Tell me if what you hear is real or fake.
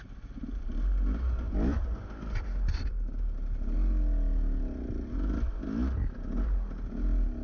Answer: real